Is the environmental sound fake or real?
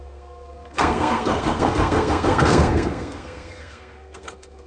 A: fake